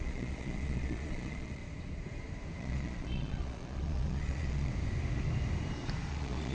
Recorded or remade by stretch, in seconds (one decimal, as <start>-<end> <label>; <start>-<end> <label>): 0.0-1.6 remade; 1.6-2.6 recorded; 2.6-4.7 remade; 4.7-6.1 recorded; 6.1-6.5 remade